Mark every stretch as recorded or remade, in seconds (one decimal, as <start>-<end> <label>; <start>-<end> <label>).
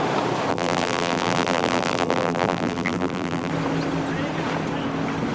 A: 0.0-0.5 recorded; 0.5-3.5 remade; 3.5-5.3 recorded